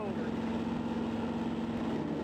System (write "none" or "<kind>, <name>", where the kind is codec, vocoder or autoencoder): none